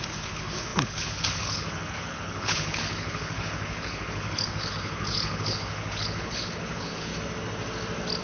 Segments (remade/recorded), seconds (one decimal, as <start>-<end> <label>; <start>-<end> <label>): 0.0-7.1 remade; 7.1-8.2 recorded